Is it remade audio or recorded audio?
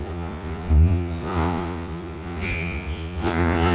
remade